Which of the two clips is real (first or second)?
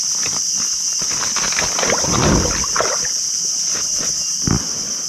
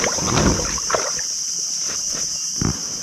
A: first